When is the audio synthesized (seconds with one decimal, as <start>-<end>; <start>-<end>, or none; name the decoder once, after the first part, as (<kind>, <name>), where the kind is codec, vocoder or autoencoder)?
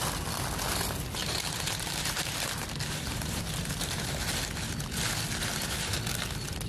1.2-4.3 (vocoder, BigVGAN v2)